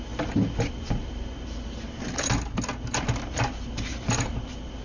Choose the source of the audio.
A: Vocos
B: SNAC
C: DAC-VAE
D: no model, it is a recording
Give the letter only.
D